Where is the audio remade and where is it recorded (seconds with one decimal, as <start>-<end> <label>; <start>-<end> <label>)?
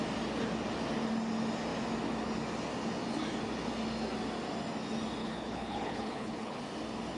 0.0-5.2 recorded; 5.2-6.6 remade; 6.6-7.2 recorded